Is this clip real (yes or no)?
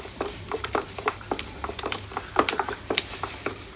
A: no